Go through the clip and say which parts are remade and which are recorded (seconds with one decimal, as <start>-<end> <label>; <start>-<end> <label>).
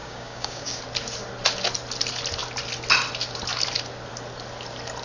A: 0.0-0.8 remade; 0.8-5.0 recorded